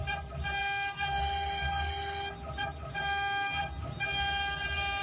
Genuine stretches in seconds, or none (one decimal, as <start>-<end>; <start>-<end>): 0.0-5.0